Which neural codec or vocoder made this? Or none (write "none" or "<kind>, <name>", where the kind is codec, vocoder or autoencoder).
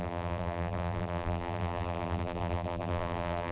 vocoder, BigVGAN v2